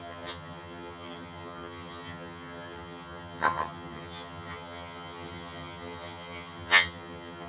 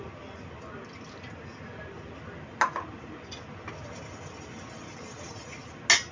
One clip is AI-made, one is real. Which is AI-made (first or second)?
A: first